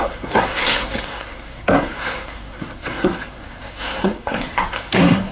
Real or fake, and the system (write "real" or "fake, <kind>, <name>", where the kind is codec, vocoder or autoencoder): fake, codec, SNAC